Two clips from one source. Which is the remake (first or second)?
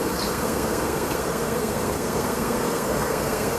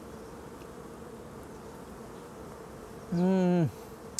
first